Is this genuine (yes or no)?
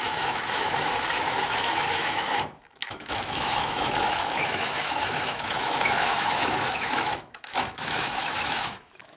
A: no